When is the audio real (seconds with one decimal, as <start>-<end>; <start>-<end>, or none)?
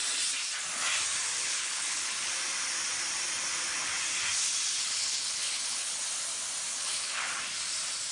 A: 0.0-1.4; 2.3-4.8; 6.0-6.7; 7.3-8.1